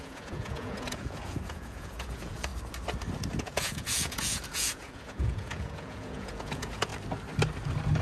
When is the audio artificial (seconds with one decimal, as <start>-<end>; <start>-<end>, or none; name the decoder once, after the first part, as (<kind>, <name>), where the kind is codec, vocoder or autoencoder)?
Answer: 0.0-2.5 (vocoder, Vocos); 3.4-6.9